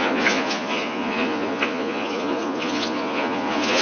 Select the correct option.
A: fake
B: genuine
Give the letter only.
A